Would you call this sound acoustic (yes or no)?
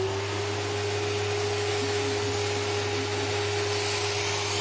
yes